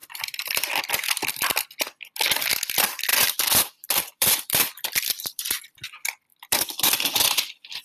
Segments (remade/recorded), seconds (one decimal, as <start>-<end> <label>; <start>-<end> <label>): 0.0-0.9 remade; 0.9-3.1 recorded; 3.1-5.5 remade; 5.5-6.3 recorded; 6.3-7.8 remade